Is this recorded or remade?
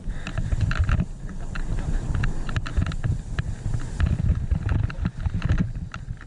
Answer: recorded